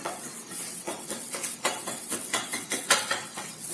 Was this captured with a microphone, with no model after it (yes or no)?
no